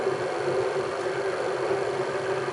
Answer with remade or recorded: recorded